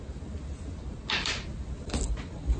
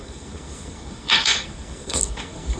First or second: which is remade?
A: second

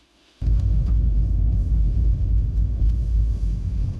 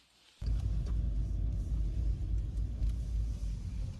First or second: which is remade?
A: first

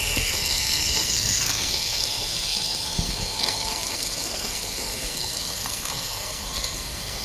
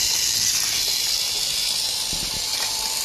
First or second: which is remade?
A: first